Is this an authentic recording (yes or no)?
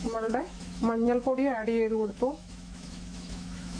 no